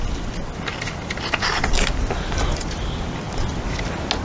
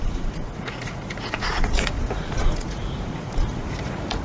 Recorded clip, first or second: first